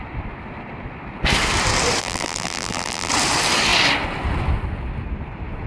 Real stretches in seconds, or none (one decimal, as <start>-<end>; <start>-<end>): 0.0-2.0; 3.1-5.7